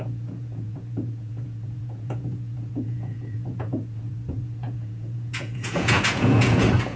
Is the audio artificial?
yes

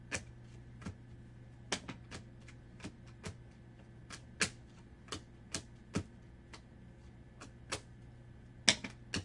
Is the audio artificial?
no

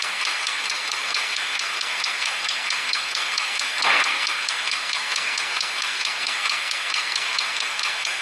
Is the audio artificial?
yes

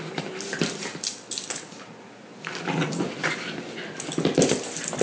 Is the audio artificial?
no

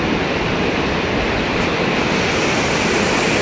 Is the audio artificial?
no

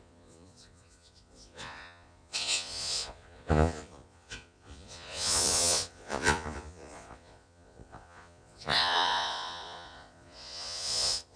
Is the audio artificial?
yes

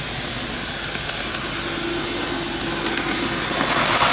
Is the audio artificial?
no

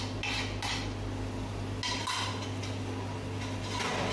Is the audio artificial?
no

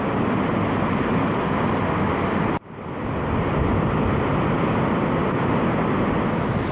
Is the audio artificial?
no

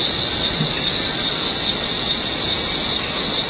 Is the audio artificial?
no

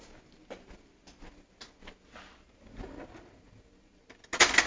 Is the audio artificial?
no